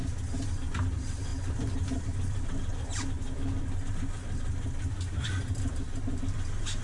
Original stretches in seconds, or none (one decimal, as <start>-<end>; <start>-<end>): 0.0-6.8